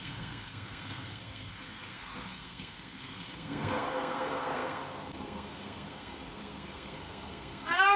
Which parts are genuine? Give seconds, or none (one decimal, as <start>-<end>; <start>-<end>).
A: none